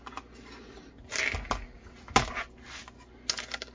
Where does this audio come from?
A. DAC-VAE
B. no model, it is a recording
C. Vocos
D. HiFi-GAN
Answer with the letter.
B